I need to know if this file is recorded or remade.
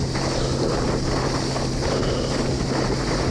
recorded